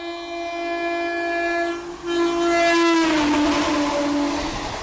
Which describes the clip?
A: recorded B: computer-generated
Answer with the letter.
A